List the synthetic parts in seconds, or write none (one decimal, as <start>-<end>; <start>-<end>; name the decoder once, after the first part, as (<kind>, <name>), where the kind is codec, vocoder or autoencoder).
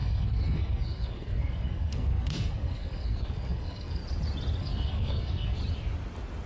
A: 0.0-4.0 (codec, SNAC); 4.6-5.6